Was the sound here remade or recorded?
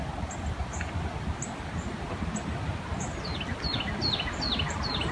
recorded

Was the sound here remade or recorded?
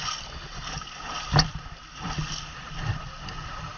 recorded